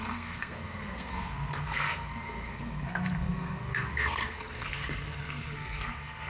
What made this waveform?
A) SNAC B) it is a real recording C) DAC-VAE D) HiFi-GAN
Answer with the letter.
A